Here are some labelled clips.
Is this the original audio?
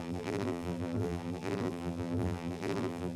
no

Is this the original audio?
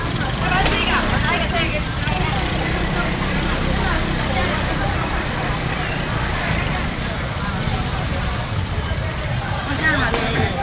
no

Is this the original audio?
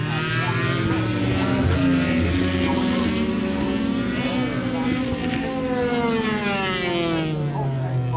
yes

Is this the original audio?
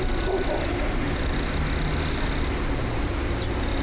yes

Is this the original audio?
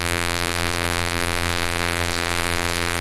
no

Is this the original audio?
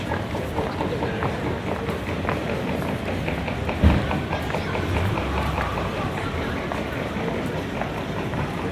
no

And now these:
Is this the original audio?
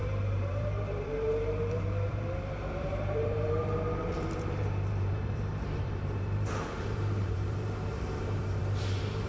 no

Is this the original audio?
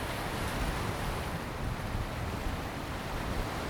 yes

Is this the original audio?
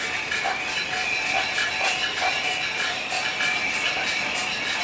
yes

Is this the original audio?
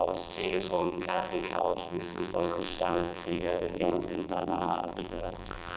no